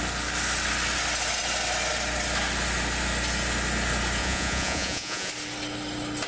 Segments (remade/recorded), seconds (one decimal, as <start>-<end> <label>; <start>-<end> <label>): 0.0-4.2 recorded; 4.2-5.3 remade; 5.3-6.3 recorded